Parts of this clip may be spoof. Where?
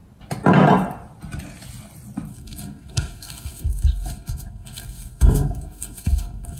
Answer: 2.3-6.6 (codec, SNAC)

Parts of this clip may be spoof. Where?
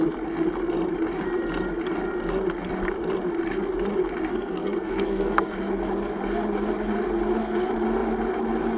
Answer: 4.3-5.5 (codec, SNAC)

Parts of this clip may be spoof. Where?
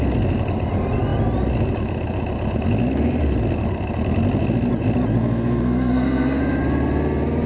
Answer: 5.2-6.4 (codec, SNAC)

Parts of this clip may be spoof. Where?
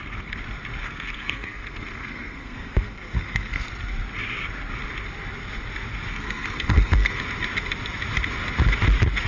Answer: 0.8-3.7 (codec, SNAC); 6.1-7.2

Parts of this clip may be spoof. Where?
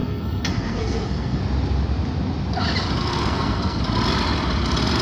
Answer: 0.0-1.4 (codec, SNAC); 3.0-3.8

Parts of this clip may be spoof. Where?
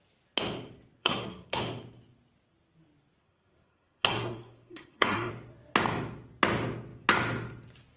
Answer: 1.0-1.6 (codec, SNAC); 3.2-5.3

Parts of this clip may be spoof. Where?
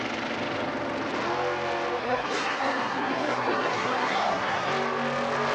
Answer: 2.0-4.7 (codec, SNAC)